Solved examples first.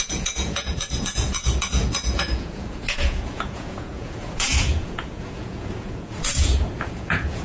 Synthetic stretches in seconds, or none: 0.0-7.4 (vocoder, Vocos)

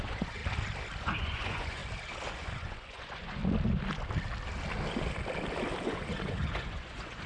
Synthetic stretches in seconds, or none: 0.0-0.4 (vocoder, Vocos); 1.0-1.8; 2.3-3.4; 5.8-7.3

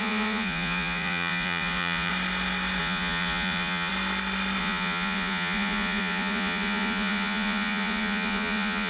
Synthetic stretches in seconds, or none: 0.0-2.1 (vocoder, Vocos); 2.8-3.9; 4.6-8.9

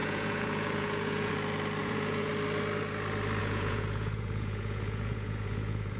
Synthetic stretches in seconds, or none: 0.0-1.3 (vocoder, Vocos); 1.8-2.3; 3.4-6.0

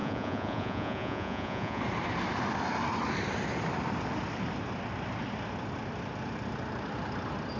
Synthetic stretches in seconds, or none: 0.0-1.8 (vocoder, Vocos)

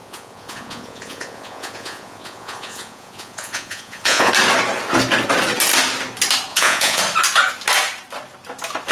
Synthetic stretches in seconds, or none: 0.0-4.3 (vocoder, Vocos); 6.5-7.0

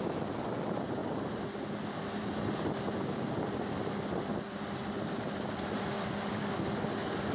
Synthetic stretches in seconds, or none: none